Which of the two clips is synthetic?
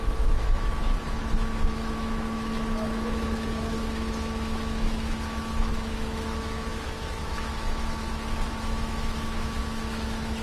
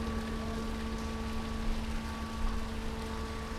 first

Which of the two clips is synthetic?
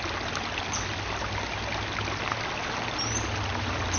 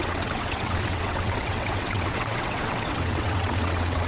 second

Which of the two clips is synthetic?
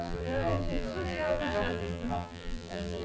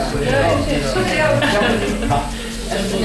first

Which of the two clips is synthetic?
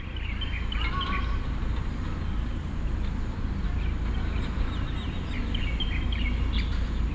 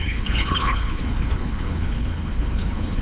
second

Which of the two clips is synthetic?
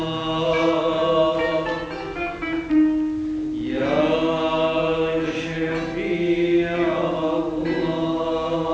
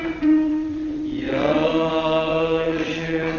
second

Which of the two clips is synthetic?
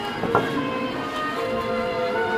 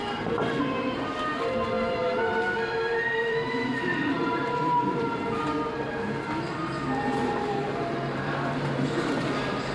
second